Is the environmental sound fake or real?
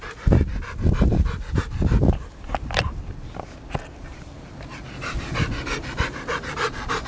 real